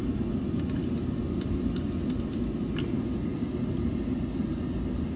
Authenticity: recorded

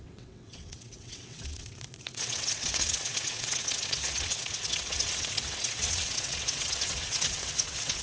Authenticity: remade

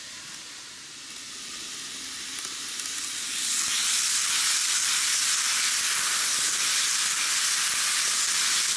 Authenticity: recorded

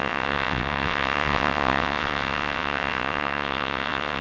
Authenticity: remade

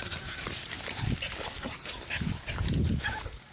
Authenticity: recorded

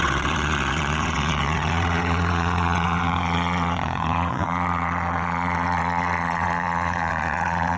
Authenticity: remade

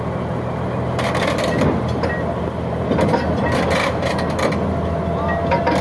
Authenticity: recorded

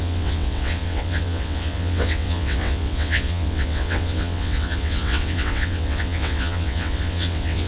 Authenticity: remade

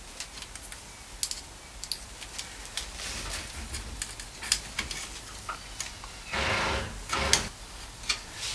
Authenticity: recorded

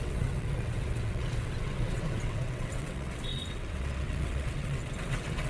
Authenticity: remade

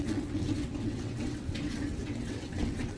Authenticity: remade